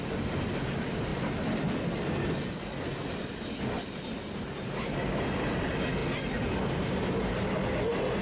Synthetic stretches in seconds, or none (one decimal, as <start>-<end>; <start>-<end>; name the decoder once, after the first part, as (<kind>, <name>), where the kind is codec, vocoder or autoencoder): none